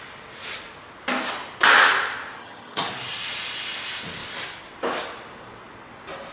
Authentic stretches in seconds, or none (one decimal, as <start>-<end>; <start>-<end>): 0.0-2.4; 2.9-6.3